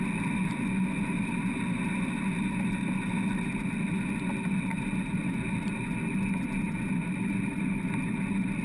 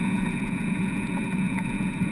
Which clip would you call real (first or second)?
first